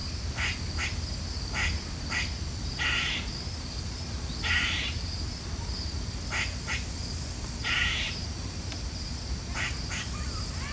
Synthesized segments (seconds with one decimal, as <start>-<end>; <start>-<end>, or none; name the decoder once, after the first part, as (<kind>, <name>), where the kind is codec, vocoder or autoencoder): none